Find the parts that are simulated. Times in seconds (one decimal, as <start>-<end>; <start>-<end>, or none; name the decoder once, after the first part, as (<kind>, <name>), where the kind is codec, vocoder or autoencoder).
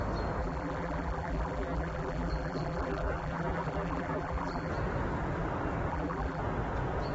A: 0.4-4.7 (vocoder, BigVGAN v2); 5.9-6.4